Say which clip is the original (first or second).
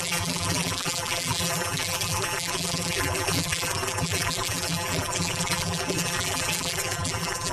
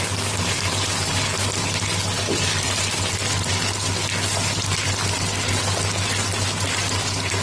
second